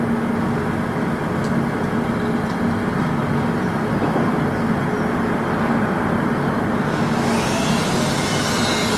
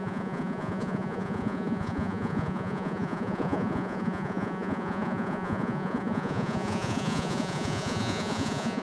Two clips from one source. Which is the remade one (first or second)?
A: second